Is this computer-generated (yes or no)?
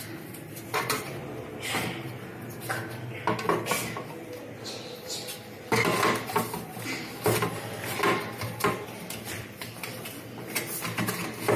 no